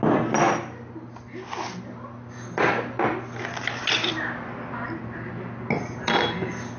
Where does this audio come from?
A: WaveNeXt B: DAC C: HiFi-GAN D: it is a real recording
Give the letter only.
D